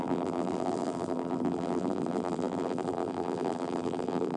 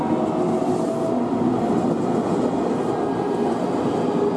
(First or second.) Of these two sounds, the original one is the second